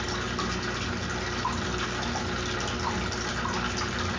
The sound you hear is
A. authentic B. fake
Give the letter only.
A